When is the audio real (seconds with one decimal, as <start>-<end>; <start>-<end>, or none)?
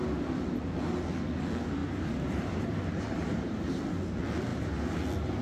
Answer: 0.0-1.8; 3.8-4.5; 5.0-5.4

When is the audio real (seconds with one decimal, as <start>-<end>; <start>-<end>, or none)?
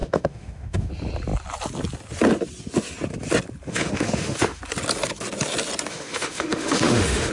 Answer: 0.9-3.7; 4.6-5.9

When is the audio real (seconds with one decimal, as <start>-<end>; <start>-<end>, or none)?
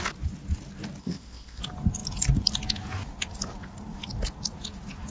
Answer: 0.0-1.0; 1.6-5.1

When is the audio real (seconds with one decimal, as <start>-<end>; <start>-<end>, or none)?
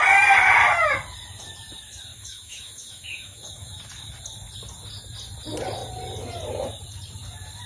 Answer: 0.0-2.1; 3.8-7.7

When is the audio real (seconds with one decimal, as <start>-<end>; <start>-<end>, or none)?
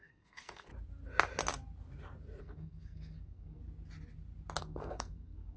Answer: 0.7-2.4; 3.6-4.6